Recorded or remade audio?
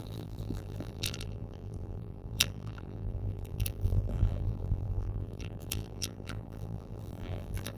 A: remade